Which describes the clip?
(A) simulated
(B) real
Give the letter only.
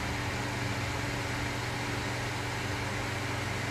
B